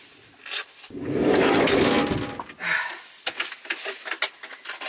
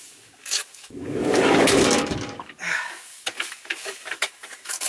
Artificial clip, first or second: second